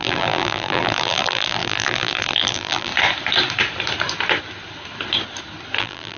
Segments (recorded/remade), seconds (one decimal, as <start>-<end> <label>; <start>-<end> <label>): 0.0-2.9 remade; 2.9-5.8 recorded; 5.8-6.2 remade